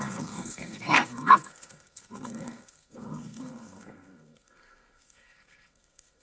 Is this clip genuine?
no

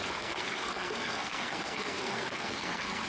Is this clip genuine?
no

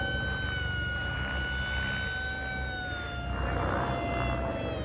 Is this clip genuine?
yes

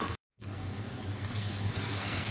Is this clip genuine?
no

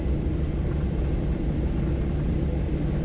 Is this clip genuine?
yes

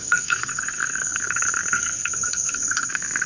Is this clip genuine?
no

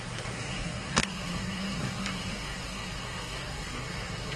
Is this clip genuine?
no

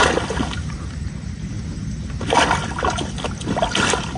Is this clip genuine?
yes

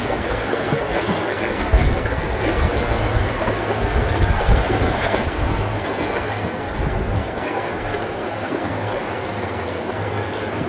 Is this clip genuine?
no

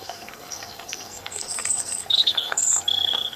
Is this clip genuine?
no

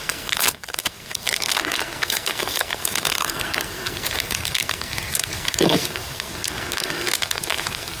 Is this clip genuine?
no